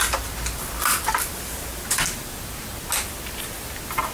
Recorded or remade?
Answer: recorded